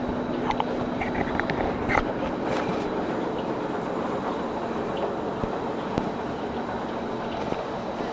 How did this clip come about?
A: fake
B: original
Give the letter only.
B